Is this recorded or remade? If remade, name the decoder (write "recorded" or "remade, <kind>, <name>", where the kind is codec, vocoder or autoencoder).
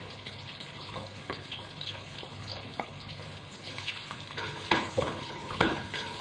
remade, codec, HILCodec